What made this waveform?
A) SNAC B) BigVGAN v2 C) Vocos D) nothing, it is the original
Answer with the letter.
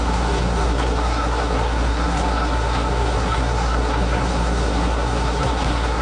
A